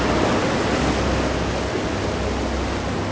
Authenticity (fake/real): real